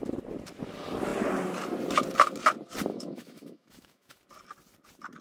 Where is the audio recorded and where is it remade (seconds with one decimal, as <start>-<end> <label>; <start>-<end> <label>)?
0.0-2.9 recorded; 2.9-4.2 remade; 4.2-5.2 recorded